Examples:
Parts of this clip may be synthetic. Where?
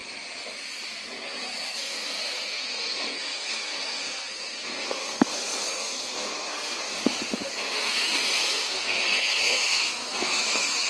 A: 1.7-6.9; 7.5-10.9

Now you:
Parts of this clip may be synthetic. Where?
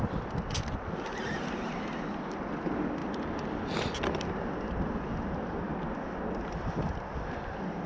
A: none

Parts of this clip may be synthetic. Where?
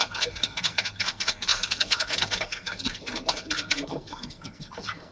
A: 0.0-5.1